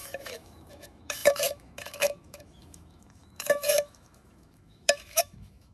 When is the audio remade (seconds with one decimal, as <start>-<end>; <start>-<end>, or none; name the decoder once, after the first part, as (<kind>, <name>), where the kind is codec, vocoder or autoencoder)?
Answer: 0.0-5.7 (autoencoder, DAC-VAE)